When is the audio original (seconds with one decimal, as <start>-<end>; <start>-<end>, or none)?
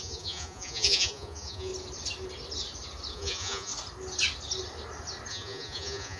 1.7-3.1; 3.7-5.3